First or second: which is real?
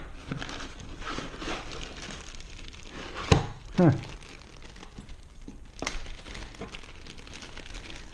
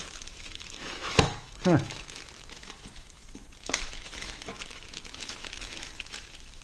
first